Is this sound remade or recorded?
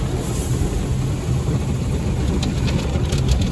recorded